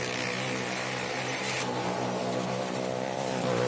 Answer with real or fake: real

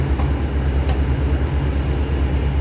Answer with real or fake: real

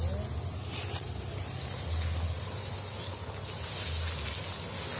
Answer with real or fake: real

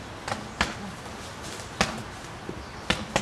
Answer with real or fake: real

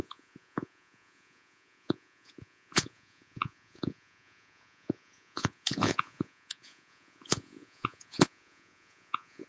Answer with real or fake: fake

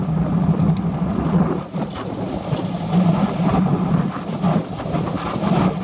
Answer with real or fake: real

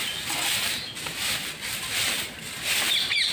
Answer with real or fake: real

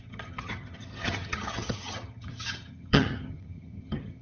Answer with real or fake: fake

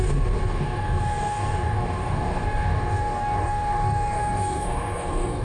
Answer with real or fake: fake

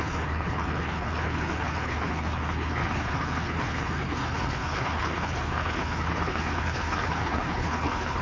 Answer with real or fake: fake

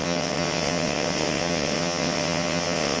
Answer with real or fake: fake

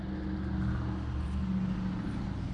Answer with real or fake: real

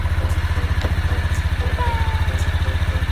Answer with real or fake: real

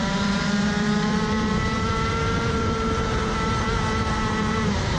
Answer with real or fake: fake